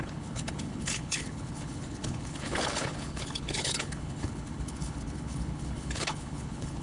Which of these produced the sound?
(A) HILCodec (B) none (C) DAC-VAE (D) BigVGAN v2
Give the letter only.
A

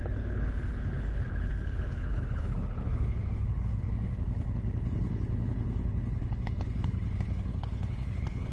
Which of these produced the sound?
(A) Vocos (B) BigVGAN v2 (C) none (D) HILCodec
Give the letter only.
D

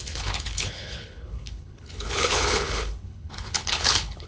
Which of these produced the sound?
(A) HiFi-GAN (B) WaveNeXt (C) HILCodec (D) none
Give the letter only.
C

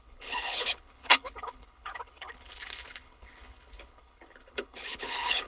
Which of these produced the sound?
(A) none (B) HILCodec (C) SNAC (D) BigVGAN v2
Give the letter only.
B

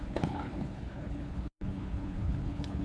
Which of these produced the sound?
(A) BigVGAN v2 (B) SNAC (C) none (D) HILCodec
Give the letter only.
D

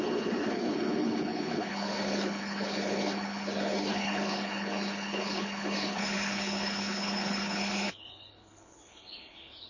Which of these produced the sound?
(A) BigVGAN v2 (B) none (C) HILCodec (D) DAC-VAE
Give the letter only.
C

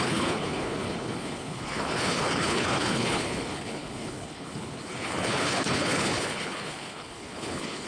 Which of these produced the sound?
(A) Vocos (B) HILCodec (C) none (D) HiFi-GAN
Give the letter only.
B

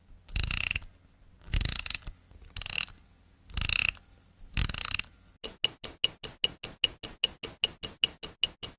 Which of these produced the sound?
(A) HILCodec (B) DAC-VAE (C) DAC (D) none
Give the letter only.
D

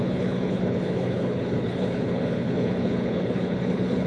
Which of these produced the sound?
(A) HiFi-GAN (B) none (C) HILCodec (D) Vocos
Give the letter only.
C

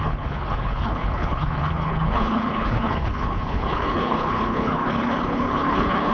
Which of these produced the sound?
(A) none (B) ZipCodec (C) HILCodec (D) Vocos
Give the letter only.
C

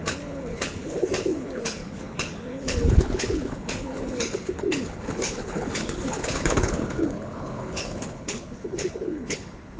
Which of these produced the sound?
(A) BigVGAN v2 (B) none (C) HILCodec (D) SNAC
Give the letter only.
C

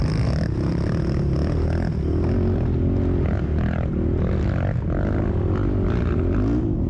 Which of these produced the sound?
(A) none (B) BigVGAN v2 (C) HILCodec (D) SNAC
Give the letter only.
A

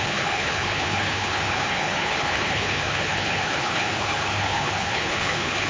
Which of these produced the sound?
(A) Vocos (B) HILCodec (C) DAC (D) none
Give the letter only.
B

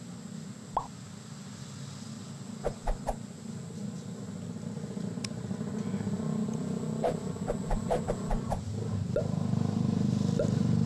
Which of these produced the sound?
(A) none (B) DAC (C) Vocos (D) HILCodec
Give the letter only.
A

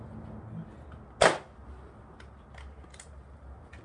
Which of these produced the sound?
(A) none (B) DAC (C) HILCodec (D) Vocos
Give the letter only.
A